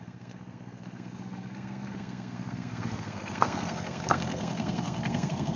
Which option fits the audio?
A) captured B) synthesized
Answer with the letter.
B